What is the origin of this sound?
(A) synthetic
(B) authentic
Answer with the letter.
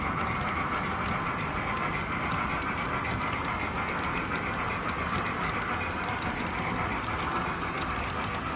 B